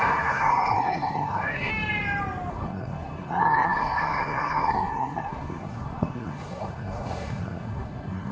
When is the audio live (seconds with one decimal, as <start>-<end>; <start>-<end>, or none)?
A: 1.7-2.5